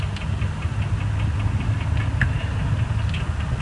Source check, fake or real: real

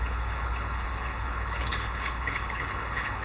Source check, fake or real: fake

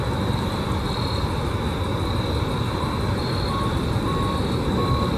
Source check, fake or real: real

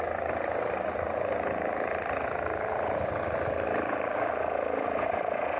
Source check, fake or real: real